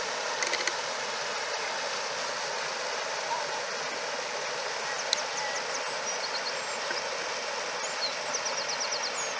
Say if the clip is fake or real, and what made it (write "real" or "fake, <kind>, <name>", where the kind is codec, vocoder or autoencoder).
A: real